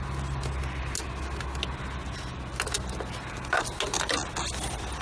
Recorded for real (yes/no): yes